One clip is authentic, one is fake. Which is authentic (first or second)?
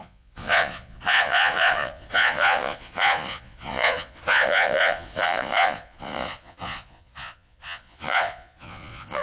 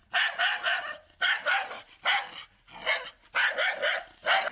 second